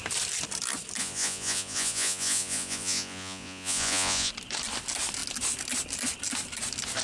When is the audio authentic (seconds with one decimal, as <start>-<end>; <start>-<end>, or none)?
0.0-1.0; 4.3-7.0